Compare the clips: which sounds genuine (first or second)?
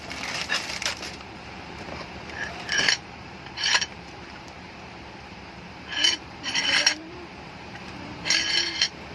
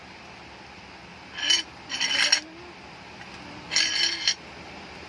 second